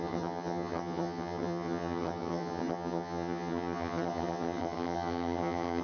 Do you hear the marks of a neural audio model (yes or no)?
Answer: yes